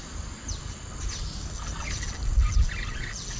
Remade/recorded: recorded